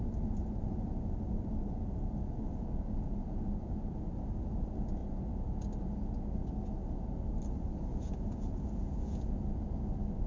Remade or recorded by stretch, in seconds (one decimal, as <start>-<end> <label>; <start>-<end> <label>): 0.0-7.9 recorded; 7.9-9.2 remade; 9.2-10.3 recorded